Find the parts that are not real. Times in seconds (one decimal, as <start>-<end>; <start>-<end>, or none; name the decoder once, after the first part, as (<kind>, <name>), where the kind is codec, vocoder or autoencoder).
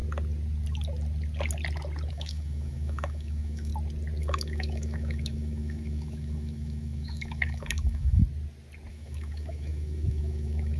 2.1-3.7 (autoencoder, DAC-VAE); 4.2-8.2; 8.9-10.8